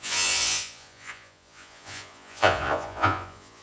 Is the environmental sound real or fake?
fake